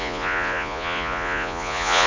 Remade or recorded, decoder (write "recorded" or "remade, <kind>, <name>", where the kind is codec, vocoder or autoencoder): remade, vocoder, Vocos